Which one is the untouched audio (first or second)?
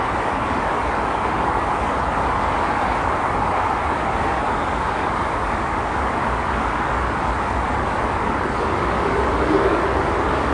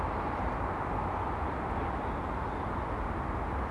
second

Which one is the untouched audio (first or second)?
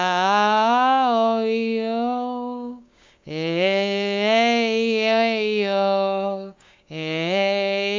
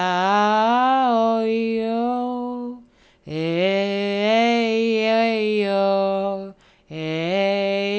second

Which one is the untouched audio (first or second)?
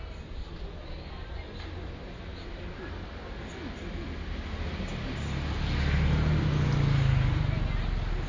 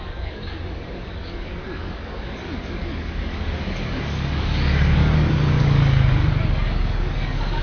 first